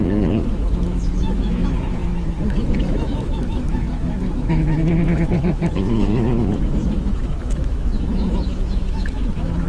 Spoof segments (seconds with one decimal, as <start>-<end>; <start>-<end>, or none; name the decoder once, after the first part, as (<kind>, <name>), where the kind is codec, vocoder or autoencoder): 0.0-9.7 (autoencoder, DAC-VAE)